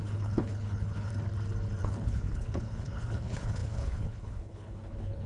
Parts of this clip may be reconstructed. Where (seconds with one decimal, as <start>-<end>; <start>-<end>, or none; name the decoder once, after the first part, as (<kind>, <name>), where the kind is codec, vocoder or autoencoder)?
0.0-1.1 (codec, HILCodec); 1.8-5.3